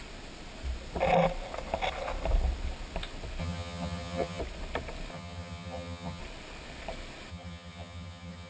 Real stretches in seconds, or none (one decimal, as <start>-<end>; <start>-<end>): 0.0-3.4; 4.4-5.1; 6.2-7.3